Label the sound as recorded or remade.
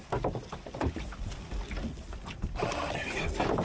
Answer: recorded